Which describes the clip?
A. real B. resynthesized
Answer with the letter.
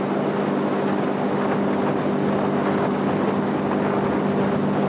A